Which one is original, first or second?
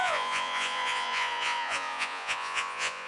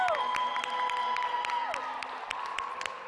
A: second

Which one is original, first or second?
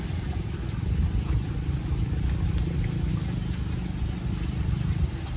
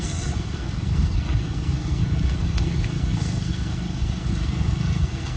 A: first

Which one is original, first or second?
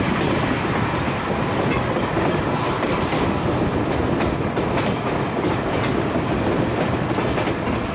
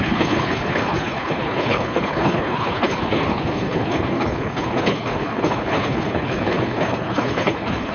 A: first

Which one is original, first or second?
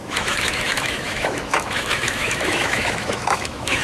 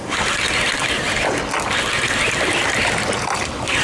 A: second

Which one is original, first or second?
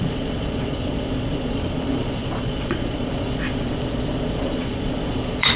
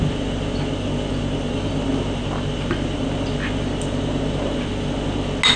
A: second